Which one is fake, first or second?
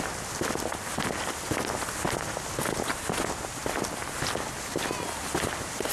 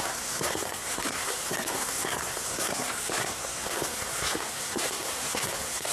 second